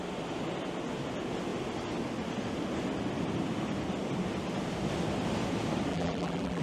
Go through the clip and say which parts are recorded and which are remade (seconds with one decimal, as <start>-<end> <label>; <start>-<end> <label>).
0.0-5.9 recorded; 5.9-6.6 remade